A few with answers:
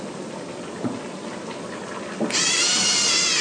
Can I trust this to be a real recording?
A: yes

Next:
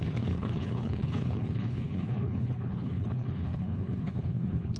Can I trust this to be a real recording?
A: no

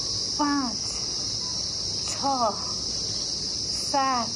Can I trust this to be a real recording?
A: yes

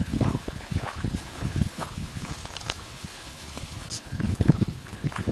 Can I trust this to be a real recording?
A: no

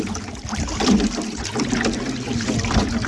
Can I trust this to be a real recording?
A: yes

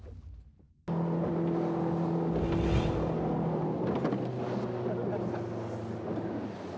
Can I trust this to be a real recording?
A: yes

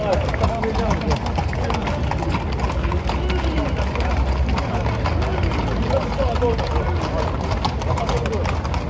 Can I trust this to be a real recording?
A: yes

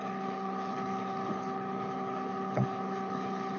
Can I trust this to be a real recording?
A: no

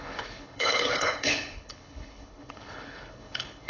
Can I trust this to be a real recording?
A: no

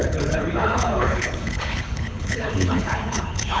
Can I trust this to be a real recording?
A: no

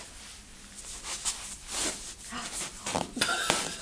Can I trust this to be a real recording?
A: yes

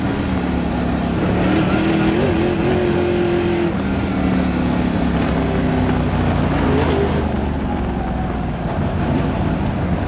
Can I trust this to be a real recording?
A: yes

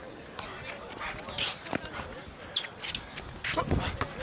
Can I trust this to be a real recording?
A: yes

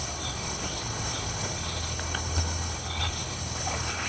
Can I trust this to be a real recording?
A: no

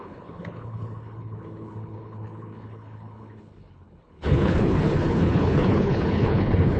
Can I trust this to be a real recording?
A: no